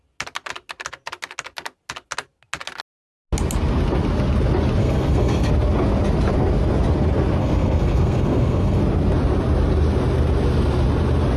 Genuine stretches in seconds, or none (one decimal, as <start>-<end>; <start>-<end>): 0.0-4.8; 5.5-7.4; 8.8-11.4